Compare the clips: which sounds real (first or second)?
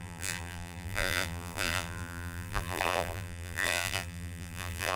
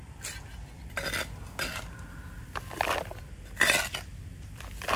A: second